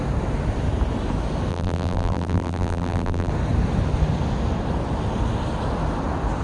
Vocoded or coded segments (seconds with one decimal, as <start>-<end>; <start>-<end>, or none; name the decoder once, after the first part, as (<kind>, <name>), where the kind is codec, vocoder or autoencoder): 1.5-3.3 (vocoder, BigVGAN v2)